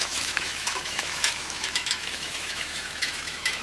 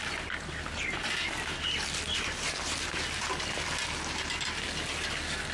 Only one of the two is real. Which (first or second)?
second